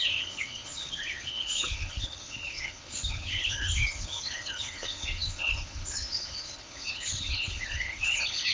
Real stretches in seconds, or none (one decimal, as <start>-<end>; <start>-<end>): none